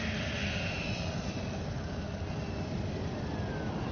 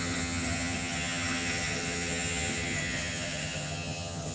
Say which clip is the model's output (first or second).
second